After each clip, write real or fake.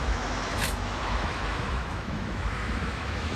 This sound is fake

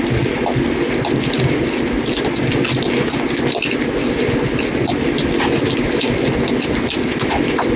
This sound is real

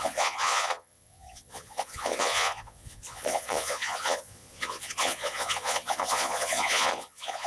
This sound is fake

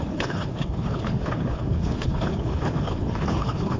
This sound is fake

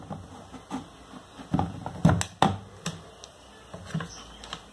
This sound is real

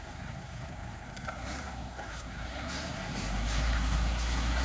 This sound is fake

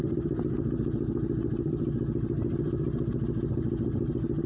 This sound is real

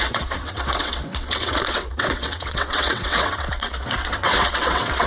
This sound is fake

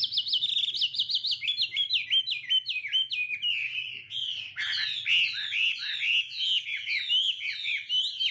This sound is real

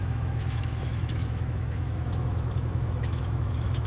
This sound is fake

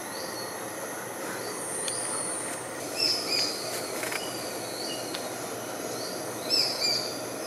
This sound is real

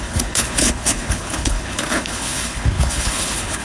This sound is fake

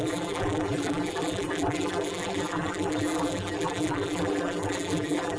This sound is fake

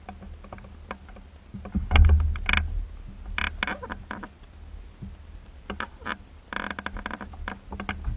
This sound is real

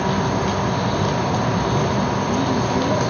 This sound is real